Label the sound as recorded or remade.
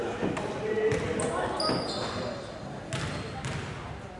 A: recorded